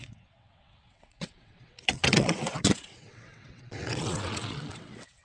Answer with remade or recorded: remade